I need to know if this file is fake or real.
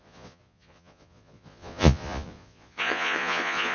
fake